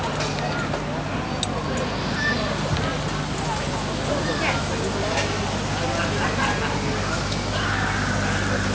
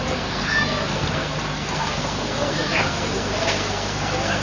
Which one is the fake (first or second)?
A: second